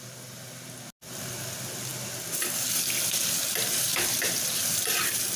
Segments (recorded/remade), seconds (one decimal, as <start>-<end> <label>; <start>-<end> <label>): 0.0-3.7 recorded; 3.7-5.0 remade; 5.0-5.4 recorded

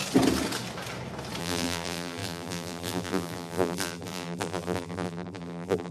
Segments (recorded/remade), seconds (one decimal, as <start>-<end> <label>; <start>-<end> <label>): 0.0-1.4 recorded; 1.4-5.9 remade

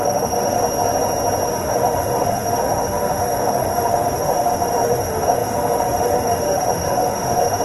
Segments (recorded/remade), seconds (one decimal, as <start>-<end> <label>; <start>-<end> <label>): 0.0-0.6 remade; 0.6-1.5 recorded; 1.5-7.6 remade

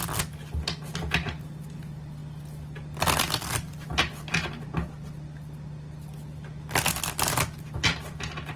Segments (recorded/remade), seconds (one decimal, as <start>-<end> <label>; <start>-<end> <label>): 0.0-8.6 recorded

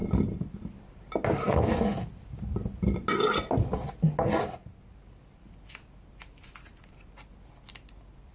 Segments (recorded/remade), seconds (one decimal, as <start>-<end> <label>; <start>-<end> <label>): 0.0-8.3 recorded

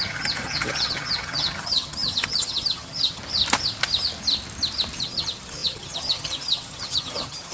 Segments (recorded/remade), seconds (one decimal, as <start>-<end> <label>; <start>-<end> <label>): 0.0-3.2 remade; 3.2-5.0 recorded; 5.0-7.5 remade